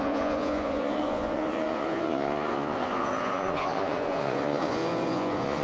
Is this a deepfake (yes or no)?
yes